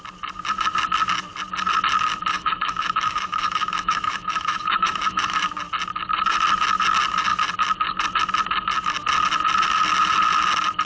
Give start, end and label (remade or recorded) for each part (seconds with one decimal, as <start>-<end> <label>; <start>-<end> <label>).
0.0-2.3 recorded; 2.3-5.5 remade; 5.5-10.8 recorded